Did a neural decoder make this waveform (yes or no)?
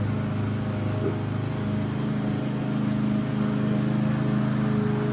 no